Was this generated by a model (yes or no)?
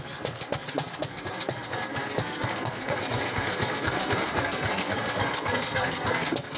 yes